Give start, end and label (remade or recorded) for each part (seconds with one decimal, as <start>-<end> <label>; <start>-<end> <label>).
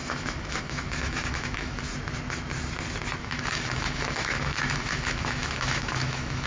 0.0-1.9 remade; 1.9-3.2 recorded; 3.2-6.5 remade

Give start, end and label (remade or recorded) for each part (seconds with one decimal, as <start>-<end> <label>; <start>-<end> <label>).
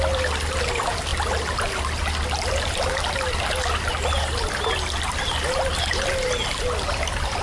0.0-7.4 recorded